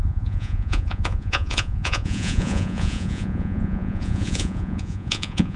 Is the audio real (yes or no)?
no